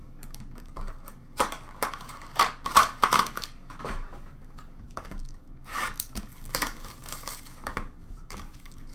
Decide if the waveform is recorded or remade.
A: remade